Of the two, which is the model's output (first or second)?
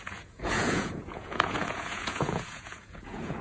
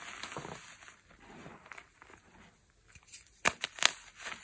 first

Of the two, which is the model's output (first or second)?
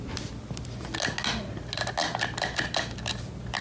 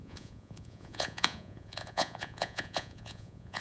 second